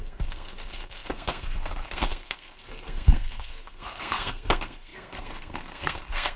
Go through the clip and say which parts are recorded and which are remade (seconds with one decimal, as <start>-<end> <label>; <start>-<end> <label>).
0.0-6.4 remade